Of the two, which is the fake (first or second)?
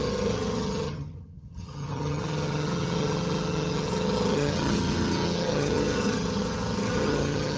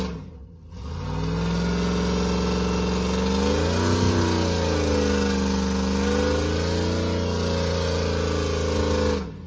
first